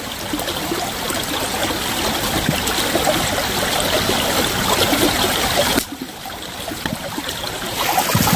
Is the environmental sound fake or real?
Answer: real